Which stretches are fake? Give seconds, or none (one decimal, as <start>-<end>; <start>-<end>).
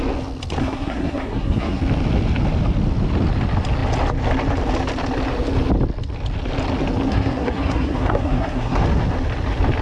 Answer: 0.6-1.8; 7.1-8.8